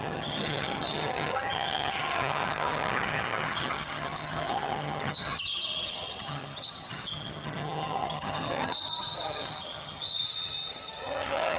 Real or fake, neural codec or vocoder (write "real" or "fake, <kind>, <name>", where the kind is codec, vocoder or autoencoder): fake, vocoder, HiFi-GAN